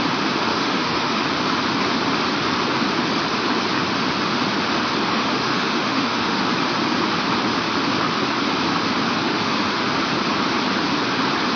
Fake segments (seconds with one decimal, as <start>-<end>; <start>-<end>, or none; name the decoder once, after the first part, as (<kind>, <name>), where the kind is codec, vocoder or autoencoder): 0.5-1.2 (autoencoder, DAC-VAE); 5.1-6.4; 9.3-9.9